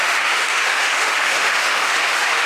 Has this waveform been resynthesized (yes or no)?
yes